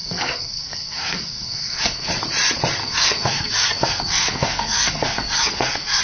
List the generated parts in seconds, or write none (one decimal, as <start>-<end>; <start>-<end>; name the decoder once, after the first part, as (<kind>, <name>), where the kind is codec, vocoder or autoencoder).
0.0-2.1 (codec, SNAC); 2.8-6.0